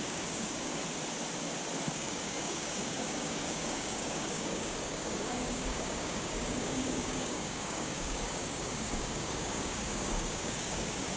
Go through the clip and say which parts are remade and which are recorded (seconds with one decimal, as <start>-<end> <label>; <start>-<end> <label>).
0.0-0.8 remade; 0.8-1.9 recorded; 1.9-11.2 remade